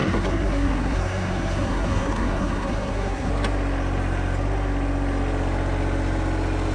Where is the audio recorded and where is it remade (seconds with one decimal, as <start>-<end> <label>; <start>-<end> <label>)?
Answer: 0.0-3.3 remade; 3.3-6.7 recorded